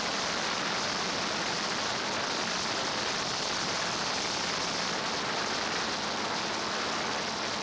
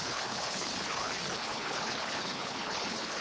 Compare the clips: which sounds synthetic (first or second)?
second